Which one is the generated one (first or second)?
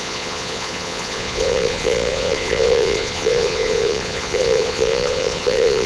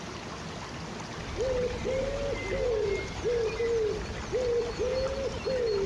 first